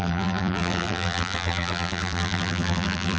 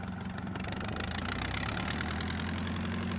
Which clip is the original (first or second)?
second